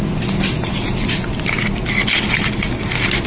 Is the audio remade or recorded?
recorded